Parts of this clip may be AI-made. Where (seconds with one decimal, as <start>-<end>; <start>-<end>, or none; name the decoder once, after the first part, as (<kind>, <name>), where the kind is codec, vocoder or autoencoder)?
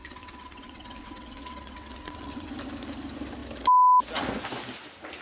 0.0-2.5 (vocoder, WaveNeXt)